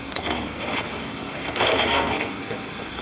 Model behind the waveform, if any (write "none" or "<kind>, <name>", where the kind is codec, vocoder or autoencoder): codec, SNAC